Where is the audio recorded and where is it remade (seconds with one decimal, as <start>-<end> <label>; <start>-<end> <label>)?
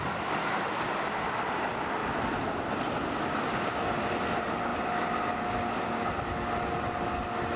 0.0-7.6 recorded